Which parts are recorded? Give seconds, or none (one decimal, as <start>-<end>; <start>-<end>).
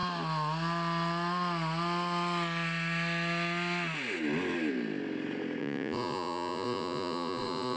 0.0-5.6